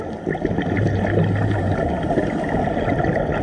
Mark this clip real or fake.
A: real